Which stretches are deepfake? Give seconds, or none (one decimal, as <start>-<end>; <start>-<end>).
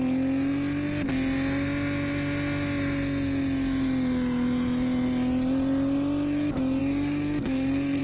6.8-8.0